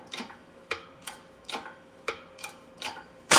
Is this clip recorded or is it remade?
remade